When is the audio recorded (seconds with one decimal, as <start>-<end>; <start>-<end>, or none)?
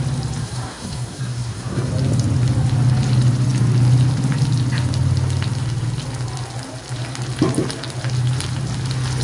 0.0-0.4; 1.9-9.2